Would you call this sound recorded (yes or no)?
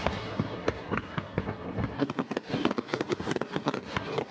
no